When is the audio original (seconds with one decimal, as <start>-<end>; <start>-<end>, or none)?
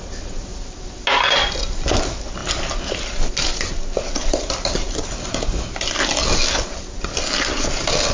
0.0-8.1